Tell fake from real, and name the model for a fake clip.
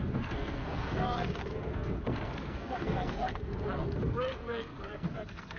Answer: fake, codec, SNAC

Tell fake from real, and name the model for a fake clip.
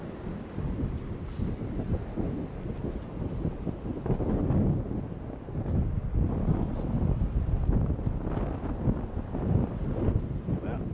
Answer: real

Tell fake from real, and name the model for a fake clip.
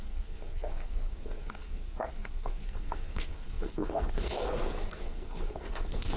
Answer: fake, codec, SNAC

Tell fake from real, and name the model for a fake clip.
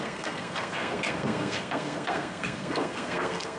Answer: fake, codec, SNAC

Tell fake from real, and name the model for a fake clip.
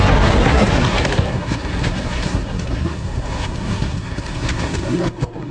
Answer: fake, codec, SNAC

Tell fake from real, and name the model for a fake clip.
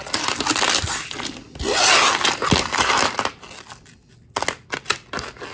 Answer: real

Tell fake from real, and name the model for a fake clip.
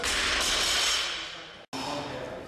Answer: real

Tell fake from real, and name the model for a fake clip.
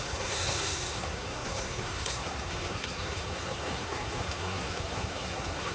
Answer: fake, codec, SNAC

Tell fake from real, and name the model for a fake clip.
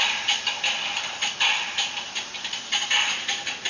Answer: real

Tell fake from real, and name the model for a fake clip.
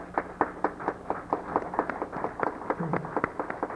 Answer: real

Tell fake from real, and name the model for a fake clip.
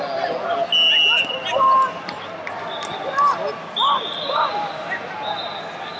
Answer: real